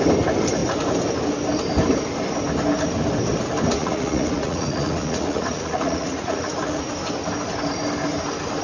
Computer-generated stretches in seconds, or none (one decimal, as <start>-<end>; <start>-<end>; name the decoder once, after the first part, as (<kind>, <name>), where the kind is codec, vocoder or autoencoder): 3.8-6.9 (vocoder, Vocos)